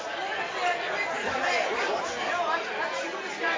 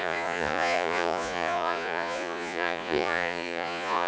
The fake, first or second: second